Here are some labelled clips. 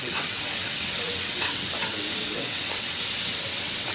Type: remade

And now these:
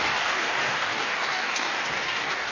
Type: remade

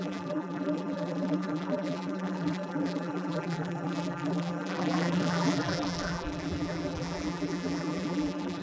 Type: remade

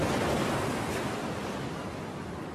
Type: recorded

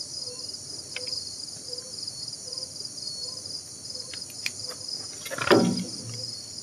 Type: recorded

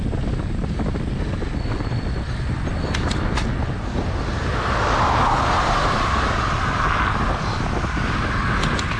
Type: recorded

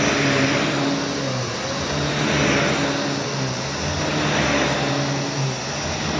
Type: recorded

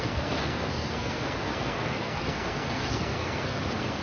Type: remade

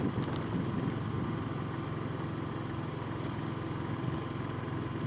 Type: recorded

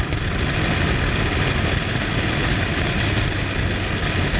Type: recorded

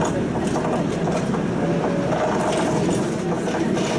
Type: recorded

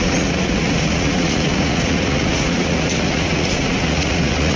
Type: remade